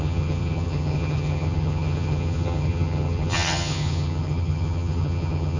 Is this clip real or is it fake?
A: fake